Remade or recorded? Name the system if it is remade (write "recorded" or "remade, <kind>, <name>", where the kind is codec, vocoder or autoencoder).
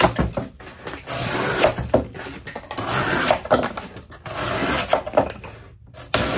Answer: recorded